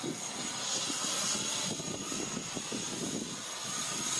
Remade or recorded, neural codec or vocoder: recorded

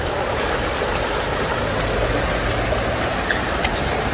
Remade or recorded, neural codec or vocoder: recorded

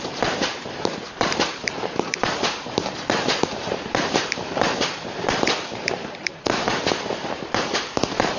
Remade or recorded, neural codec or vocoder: remade, vocoder, BigVGAN v2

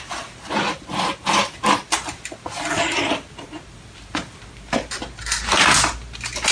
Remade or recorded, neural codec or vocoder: recorded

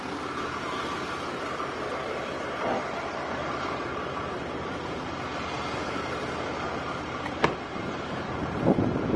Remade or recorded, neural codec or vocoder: remade, vocoder, BigVGAN v2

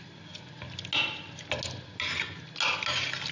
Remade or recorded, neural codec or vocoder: recorded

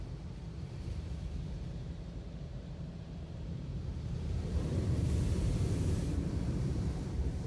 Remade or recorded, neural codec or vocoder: remade, vocoder, BigVGAN v2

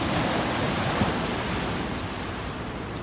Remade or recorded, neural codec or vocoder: remade, vocoder, BigVGAN v2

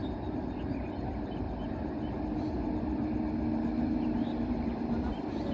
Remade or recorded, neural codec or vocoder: recorded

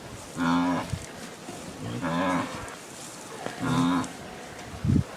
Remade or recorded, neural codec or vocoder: recorded